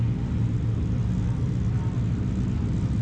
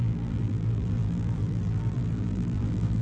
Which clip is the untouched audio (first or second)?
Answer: first